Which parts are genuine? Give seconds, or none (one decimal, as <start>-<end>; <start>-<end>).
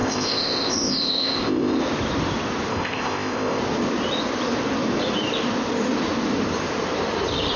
1.8-2.7; 3.6-7.6